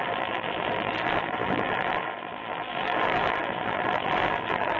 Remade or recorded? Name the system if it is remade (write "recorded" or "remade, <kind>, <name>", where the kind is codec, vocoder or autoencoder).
remade, vocoder, BigVGAN v2